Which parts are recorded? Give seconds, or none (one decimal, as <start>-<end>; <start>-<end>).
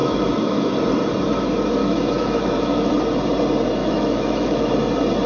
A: 0.7-1.8; 2.9-3.8; 4.7-5.3